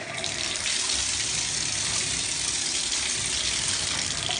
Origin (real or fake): real